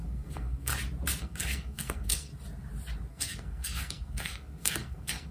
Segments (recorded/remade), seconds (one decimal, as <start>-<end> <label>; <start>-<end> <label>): 0.0-0.7 remade; 0.7-1.2 recorded; 1.2-2.3 remade; 2.3-3.1 recorded; 3.1-5.3 remade